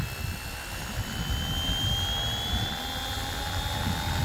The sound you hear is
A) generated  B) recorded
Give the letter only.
B